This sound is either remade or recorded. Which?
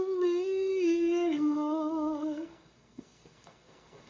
remade